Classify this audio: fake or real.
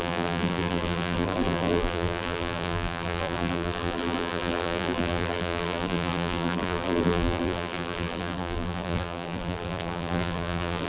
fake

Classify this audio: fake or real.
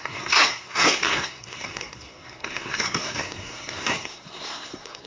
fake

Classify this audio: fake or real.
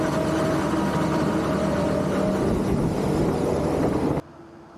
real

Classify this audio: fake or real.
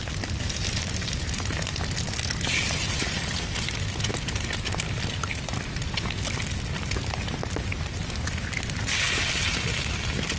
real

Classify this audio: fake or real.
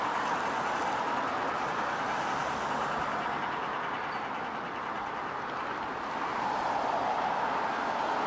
real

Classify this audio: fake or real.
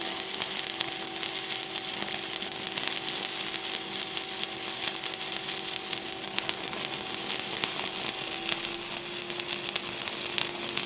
real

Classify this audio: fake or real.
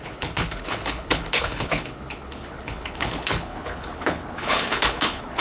fake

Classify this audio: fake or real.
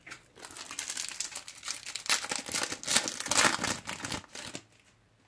real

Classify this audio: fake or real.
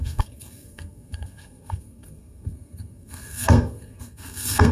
fake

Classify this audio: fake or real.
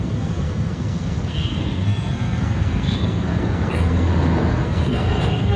fake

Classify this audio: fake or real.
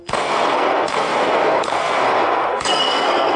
fake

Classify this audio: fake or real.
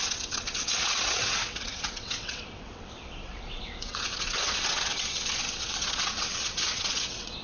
fake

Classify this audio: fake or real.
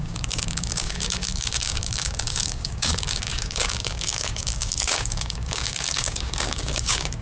fake